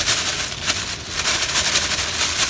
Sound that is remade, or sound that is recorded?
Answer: recorded